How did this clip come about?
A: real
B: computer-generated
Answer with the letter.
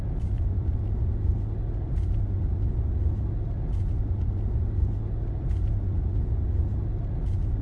A